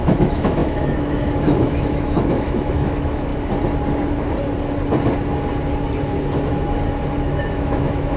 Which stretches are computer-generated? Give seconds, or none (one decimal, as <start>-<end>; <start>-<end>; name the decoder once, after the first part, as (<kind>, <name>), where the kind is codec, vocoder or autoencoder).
0.0-3.3 (autoencoder, DAC-VAE); 7.2-8.2